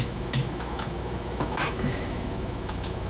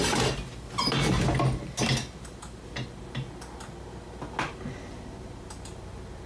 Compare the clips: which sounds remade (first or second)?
first